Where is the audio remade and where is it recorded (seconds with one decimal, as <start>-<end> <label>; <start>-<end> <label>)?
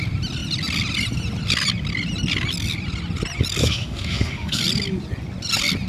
0.0-3.6 recorded; 3.6-4.6 remade; 4.6-5.9 recorded